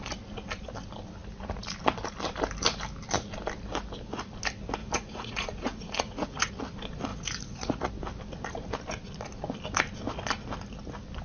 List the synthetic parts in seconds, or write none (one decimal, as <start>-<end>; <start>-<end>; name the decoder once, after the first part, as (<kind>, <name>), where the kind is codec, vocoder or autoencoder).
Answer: 4.8-6.5 (vocoder, Vocos); 7.1-7.9